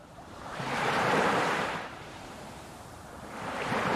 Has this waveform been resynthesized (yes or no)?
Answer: yes